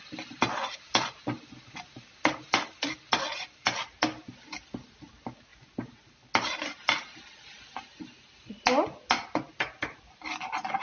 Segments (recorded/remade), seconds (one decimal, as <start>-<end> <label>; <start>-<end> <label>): 0.0-10.8 recorded